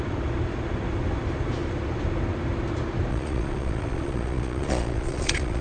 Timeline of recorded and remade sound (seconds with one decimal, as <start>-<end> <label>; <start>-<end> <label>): 0.0-3.1 recorded; 3.1-5.6 remade